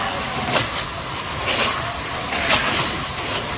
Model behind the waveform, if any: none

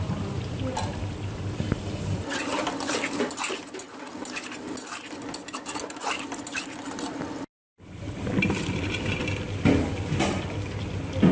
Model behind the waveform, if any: none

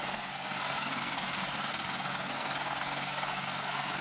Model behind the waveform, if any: codec, SNAC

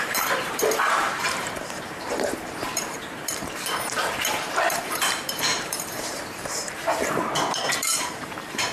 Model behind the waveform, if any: vocoder, BigVGAN v2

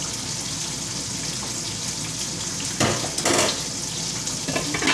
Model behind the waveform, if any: none